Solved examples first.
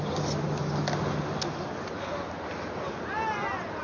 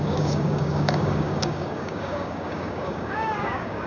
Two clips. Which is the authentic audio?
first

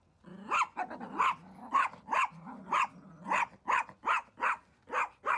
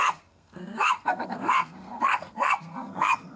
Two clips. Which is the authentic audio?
first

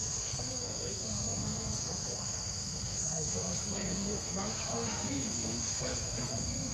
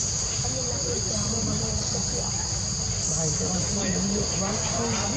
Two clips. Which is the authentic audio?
second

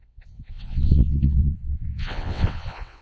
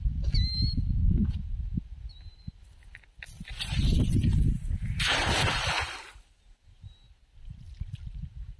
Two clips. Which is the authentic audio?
second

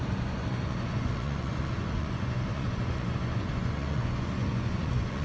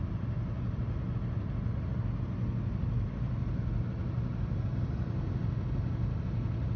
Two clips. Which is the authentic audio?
second